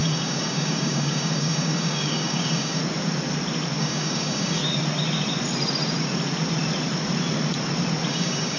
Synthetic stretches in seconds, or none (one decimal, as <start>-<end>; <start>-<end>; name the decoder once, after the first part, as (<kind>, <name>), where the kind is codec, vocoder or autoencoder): 0.0-2.8 (codec, DAC); 3.8-4.6; 8.1-8.6